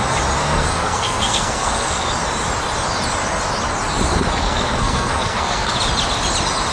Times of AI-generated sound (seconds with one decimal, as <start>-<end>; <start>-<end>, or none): 0.4-2.1; 4.4-5.7